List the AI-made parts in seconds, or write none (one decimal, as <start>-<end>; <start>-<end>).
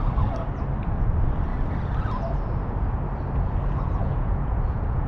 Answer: 4.0-5.1